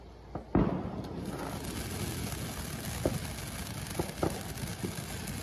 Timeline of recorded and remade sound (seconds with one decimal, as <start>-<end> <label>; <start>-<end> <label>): 0.0-5.4 recorded

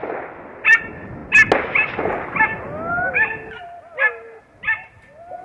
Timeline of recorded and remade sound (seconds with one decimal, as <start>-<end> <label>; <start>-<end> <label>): 0.0-5.4 recorded